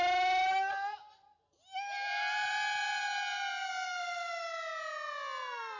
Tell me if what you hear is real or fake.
real